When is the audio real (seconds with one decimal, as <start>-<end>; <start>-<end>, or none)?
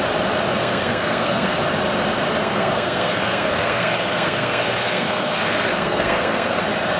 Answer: 0.0-0.6; 1.6-2.4; 6.6-7.0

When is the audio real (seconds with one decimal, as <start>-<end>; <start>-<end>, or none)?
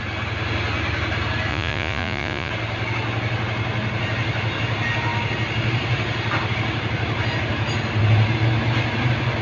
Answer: 0.0-1.5; 2.5-9.4